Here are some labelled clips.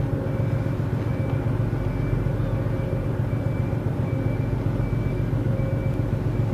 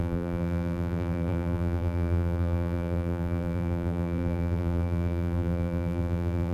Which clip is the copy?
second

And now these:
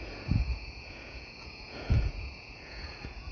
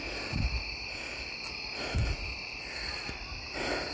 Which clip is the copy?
first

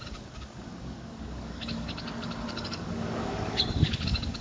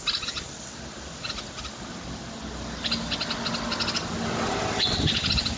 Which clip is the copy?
first